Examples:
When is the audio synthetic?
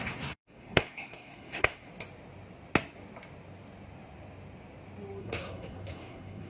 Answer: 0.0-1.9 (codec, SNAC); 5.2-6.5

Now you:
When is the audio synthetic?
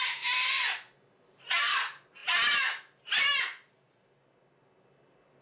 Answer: none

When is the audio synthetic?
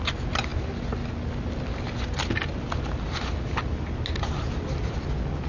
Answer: none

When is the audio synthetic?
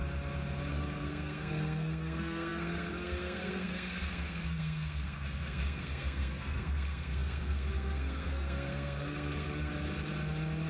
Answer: 0.7-9.7 (codec, SNAC)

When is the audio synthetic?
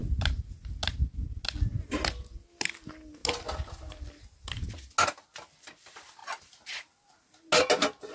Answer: none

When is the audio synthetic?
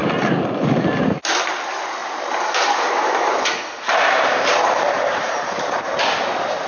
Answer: 2.0-6.0 (vocoder, BigVGAN v2)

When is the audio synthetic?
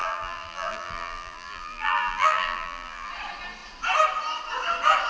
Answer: 0.0-3.1 (vocoder, BigVGAN v2)